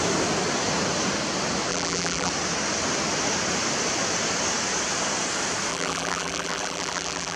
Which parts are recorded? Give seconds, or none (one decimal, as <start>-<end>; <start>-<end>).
0.0-1.7; 2.3-5.7